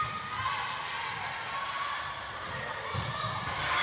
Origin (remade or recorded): recorded